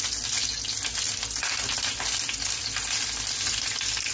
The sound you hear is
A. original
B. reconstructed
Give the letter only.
A